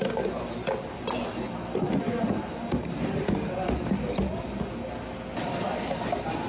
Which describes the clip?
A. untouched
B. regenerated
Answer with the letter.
A